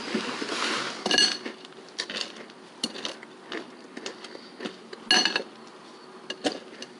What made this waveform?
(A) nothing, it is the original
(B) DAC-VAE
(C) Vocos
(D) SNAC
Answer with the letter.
A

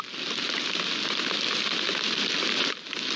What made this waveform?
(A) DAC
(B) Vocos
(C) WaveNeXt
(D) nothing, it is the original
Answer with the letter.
D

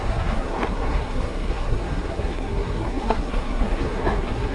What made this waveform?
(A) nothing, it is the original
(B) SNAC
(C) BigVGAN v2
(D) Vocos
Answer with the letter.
B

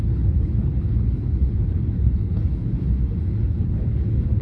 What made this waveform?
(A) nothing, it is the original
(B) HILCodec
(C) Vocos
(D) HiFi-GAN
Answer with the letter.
B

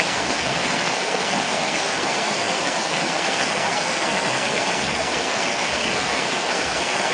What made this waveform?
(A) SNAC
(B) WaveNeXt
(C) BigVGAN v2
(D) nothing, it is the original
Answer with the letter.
A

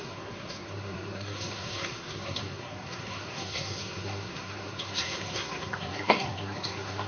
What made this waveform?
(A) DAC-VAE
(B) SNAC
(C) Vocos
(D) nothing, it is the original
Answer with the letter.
B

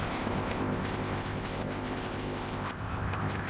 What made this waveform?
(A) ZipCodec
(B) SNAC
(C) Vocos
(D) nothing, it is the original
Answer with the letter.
A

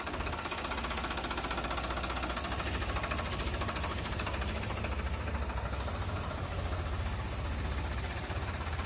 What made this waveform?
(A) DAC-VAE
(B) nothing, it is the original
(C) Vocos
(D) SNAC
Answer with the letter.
B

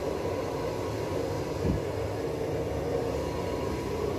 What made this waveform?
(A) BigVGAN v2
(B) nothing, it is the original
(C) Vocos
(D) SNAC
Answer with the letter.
B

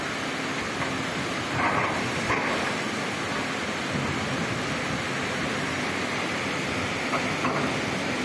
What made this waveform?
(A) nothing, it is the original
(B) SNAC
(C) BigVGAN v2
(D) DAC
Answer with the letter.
A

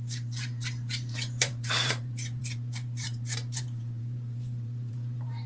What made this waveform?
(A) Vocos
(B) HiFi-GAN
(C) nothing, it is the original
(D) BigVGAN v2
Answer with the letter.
D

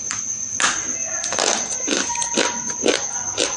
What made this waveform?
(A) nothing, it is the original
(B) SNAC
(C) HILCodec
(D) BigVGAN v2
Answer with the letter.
A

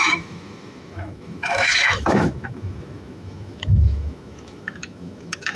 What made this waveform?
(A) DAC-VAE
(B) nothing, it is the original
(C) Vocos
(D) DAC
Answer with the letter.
A